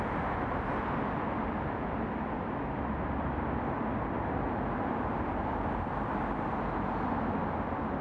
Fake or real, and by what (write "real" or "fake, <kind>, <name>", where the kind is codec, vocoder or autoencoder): real